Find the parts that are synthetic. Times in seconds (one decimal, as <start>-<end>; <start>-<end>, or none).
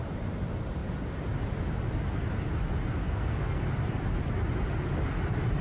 3.0-3.6